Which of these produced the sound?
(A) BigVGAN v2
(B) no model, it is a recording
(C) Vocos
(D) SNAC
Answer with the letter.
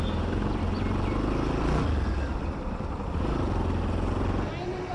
B